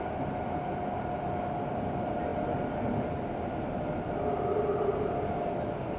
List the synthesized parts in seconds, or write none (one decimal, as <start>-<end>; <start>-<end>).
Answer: none